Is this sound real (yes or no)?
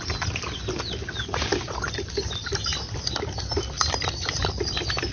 yes